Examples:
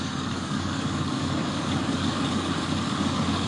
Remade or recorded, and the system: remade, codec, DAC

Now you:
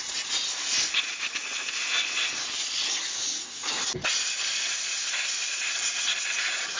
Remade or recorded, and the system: recorded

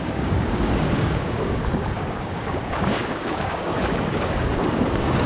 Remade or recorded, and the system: remade, codec, DAC